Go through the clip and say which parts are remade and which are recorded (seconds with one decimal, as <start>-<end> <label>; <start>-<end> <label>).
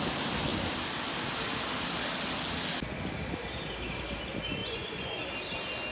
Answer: 0.0-4.6 recorded; 4.6-5.2 remade; 5.2-5.9 recorded